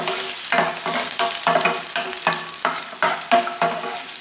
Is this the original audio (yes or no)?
yes